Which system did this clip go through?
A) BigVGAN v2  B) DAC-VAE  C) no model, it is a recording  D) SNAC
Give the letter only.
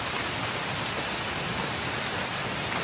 C